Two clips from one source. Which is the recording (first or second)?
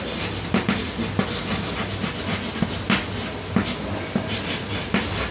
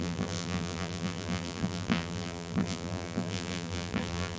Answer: first